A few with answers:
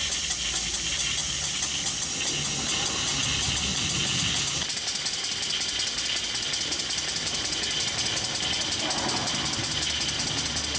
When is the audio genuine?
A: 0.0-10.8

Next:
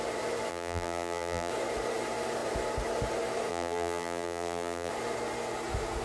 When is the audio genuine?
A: 0.0-0.5; 1.5-3.5; 4.9-6.0

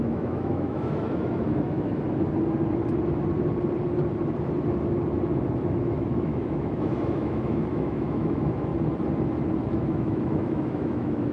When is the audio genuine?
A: 1.9-5.6; 8.7-9.7

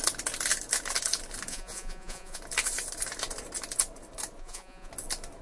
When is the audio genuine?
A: 0.0-1.5; 2.4-4.4; 4.9-5.4

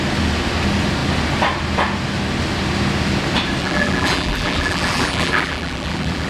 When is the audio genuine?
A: 0.0-3.6

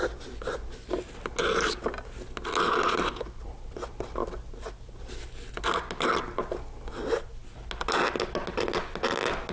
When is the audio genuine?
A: 0.0-9.5

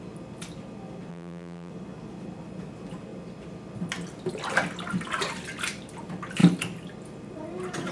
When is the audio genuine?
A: 0.0-1.1; 1.7-7.9

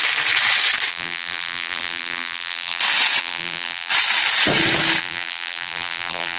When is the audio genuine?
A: 0.0-0.9; 2.8-3.2; 3.9-5.0